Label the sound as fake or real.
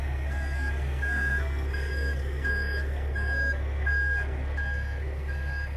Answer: fake